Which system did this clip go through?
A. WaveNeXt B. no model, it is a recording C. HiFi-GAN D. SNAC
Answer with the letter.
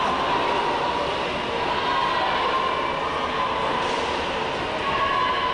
B